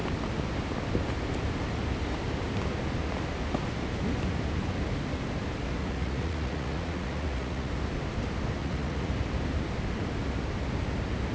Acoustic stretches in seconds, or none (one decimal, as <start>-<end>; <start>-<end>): 0.0-5.8; 7.7-8.6; 9.1-11.3